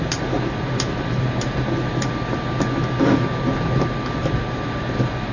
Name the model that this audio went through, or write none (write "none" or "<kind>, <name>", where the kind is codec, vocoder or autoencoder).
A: none